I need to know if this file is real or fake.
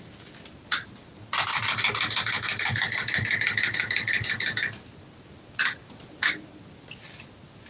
real